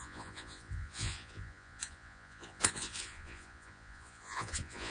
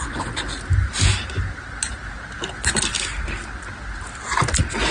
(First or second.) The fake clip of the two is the first